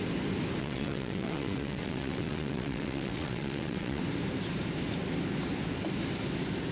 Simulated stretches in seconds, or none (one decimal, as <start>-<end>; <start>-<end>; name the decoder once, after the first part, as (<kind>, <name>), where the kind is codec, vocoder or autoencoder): 0.6-4.0 (vocoder, WaveNeXt)